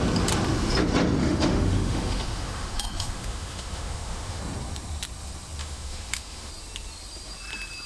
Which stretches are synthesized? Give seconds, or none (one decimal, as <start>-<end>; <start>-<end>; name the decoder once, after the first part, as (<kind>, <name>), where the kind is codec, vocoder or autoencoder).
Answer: 1.2-4.4 (autoencoder, DAC-VAE); 5.6-6.5